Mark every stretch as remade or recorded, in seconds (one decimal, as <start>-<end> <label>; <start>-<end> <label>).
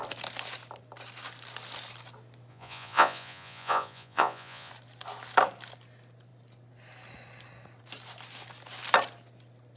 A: 0.0-2.5 recorded; 2.5-4.7 remade; 4.7-9.8 recorded